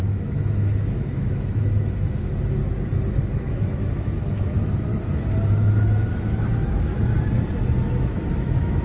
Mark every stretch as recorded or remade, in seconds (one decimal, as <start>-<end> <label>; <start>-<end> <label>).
0.0-2.6 remade; 2.6-3.2 recorded; 3.2-4.9 remade; 4.9-5.5 recorded; 5.5-6.9 remade; 6.9-7.6 recorded; 7.6-8.8 remade